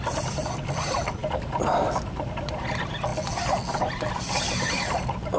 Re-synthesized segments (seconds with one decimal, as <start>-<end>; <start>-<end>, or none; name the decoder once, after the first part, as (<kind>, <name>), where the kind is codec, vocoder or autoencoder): none